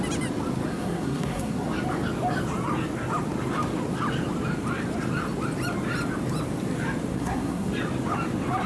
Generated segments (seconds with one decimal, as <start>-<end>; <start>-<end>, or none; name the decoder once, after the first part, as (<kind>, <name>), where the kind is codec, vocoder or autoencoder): 0.7-1.7 (codec, SNAC); 7.1-7.7

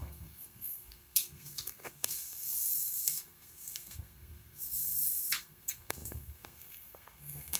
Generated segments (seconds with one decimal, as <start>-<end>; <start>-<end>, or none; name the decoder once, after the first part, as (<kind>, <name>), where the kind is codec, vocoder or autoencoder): 0.0-7.6 (codec, SNAC)

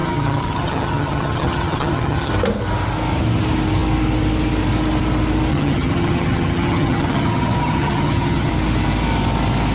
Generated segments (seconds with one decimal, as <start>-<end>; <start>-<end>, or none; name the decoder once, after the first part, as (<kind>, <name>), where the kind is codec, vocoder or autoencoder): 0.0-2.3 (vocoder, HiFi-GAN); 5.5-8.5

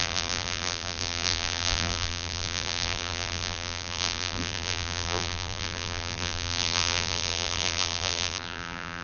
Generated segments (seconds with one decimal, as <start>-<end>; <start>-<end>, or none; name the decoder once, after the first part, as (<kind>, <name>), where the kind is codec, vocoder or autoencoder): 0.0-9.0 (vocoder, BigVGAN v2)

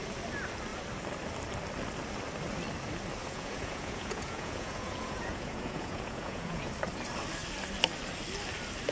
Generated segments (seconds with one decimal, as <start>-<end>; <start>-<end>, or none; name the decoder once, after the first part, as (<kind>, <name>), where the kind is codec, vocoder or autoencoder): 3.2-6.7 (vocoder, Vocos)

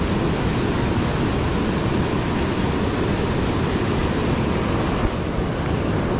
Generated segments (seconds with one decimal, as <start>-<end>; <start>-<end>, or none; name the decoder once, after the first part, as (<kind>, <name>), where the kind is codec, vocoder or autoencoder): none

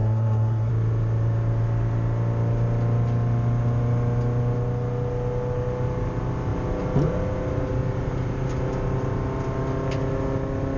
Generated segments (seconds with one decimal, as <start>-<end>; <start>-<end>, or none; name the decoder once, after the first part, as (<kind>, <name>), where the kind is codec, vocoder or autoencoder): 0.0-0.7 (codec, SNAC)